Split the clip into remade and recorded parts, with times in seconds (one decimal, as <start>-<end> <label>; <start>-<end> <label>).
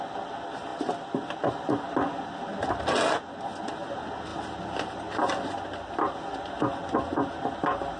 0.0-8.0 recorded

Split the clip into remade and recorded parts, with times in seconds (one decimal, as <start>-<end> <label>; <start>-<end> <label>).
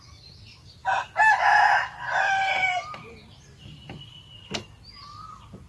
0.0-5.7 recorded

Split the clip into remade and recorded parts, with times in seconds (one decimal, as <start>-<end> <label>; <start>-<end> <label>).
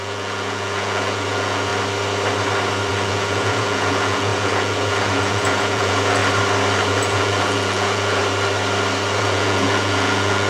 0.0-1.7 remade; 1.7-2.9 recorded; 2.9-6.2 remade; 6.2-6.8 recorded; 6.8-8.2 remade; 8.2-9.2 recorded; 9.2-10.5 remade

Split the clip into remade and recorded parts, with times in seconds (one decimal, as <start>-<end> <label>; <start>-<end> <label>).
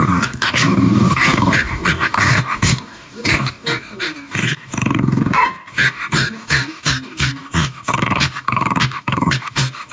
0.0-9.9 remade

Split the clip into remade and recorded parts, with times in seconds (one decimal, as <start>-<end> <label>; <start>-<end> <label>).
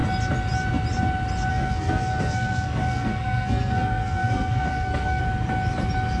0.0-1.5 recorded; 1.5-5.2 remade; 5.2-6.2 recorded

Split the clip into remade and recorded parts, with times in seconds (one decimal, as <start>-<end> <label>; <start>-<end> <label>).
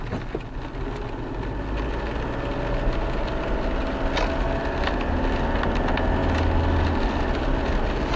0.0-8.2 recorded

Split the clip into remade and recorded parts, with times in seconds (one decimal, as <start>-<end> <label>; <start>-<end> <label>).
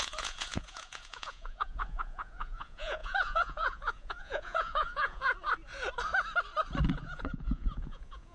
0.0-5.2 remade; 5.2-6.9 recorded; 6.9-8.3 remade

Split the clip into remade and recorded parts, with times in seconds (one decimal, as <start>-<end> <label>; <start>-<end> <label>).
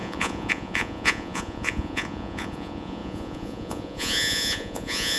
0.0-5.2 remade